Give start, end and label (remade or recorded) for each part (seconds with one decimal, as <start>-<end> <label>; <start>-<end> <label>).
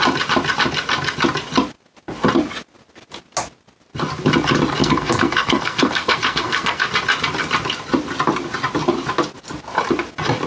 0.0-4.8 recorded; 4.8-6.9 remade; 6.9-10.5 recorded